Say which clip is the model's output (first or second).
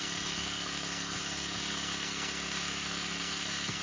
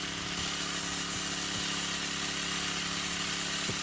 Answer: first